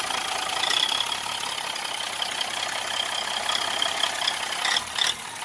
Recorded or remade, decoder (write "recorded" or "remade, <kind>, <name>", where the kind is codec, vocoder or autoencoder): recorded